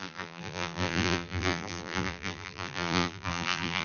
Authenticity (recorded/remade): remade